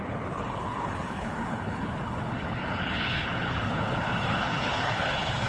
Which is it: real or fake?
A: fake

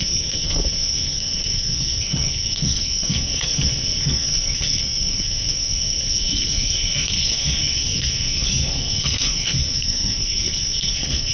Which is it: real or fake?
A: fake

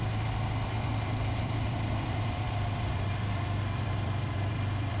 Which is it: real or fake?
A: fake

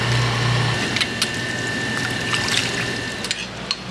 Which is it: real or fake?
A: real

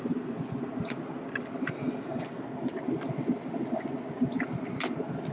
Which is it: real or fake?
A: real